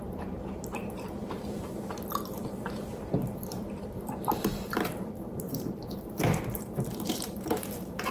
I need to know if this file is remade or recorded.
remade